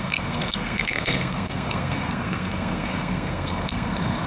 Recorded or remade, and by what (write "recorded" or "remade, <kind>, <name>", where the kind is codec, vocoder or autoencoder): remade, codec, SNAC